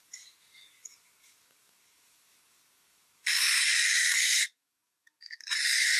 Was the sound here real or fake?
fake